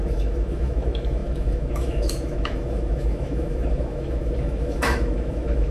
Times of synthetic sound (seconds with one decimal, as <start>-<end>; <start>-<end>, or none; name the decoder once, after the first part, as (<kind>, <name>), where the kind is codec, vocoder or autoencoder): 0.0-5.7 (autoencoder, DAC-VAE)